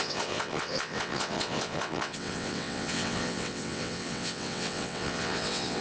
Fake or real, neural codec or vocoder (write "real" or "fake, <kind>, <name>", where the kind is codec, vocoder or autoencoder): fake, vocoder, WaveNeXt